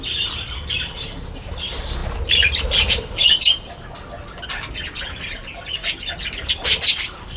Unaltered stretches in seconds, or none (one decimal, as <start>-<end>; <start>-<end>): 0.0-7.4